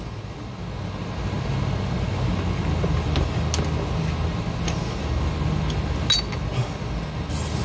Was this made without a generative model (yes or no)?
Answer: yes